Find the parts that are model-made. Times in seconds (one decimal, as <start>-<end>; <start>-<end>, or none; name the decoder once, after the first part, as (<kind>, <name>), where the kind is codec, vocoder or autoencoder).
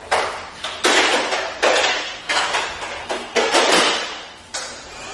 1.9-2.5 (codec, SNAC); 3.0-3.6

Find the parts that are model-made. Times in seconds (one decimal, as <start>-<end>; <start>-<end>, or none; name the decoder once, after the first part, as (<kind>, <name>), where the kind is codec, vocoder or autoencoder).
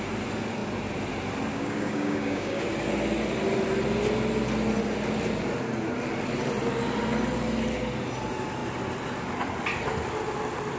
1.5-2.6 (codec, DAC)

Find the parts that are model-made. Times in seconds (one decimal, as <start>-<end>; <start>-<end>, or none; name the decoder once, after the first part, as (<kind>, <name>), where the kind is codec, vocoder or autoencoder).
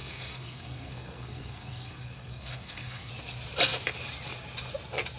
0.0-3.1 (codec, SNAC)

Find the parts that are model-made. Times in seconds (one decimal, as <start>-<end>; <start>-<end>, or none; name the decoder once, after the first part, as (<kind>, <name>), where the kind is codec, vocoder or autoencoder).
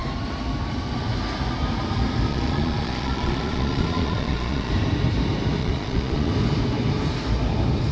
2.3-4.7 (vocoder, Vocos); 5.6-6.3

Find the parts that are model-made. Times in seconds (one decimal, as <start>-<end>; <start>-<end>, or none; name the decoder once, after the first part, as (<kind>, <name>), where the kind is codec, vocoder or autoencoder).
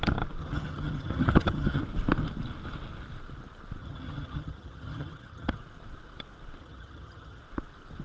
0.4-1.8 (vocoder, HiFi-GAN); 3.8-5.6; 6.6-7.4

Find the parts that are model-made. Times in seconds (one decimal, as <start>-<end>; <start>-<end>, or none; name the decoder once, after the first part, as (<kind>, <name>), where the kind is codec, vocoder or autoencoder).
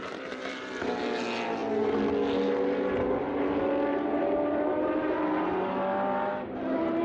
3.9-7.0 (vocoder, BigVGAN v2)